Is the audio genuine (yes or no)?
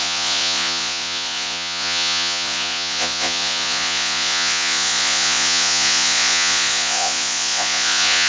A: no